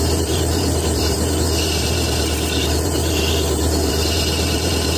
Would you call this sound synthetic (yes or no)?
yes